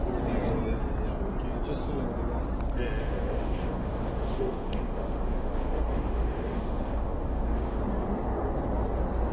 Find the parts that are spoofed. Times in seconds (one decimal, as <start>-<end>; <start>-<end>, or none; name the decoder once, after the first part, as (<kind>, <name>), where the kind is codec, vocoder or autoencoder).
3.0-7.8 (autoencoder, DAC-VAE)